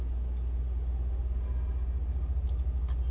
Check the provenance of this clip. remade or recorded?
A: recorded